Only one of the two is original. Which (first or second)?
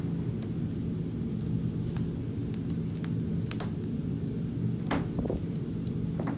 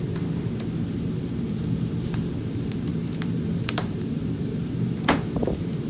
first